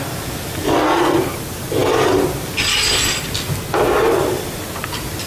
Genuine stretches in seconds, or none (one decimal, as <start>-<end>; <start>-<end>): 0.0-5.3